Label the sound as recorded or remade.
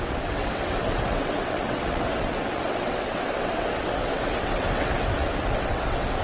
remade